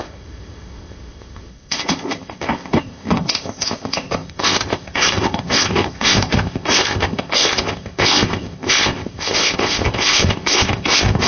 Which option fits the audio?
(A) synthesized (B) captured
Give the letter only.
A